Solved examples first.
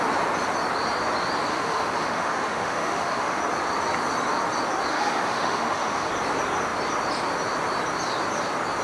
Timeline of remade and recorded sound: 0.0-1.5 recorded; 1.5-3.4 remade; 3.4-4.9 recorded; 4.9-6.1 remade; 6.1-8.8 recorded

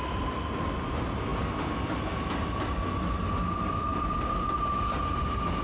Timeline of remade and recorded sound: 0.0-5.6 recorded

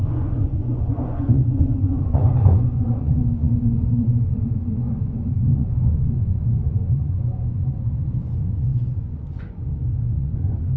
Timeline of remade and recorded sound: 0.0-10.8 remade

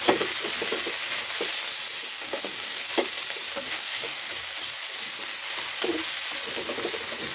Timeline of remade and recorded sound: 0.0-2.1 recorded; 2.1-2.9 remade; 2.9-3.7 recorded; 3.7-4.3 remade; 4.3-7.3 recorded

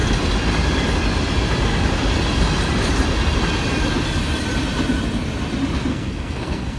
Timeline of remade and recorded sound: 0.0-5.9 recorded; 5.9-6.8 remade

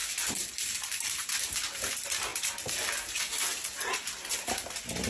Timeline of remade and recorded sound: 0.0-5.1 recorded

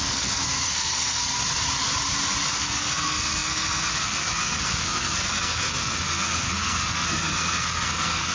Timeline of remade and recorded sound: 0.0-1.3 remade; 1.3-2.5 recorded; 2.5-8.3 remade